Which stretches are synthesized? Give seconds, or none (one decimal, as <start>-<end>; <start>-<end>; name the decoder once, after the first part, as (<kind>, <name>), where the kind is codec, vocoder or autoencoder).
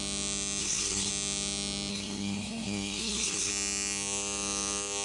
0.6-1.1 (codec, SNAC); 1.9-3.5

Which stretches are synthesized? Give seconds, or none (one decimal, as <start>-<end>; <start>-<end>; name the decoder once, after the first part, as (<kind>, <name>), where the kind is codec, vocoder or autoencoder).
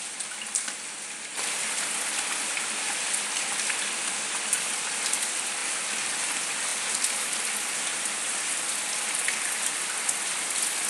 none